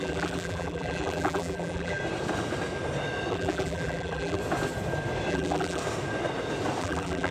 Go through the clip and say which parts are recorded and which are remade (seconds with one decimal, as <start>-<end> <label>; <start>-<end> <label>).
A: 0.0-2.0 remade; 2.0-3.3 recorded; 3.3-4.4 remade; 4.4-5.3 recorded; 5.3-5.8 remade; 5.8-6.8 recorded; 6.8-7.3 remade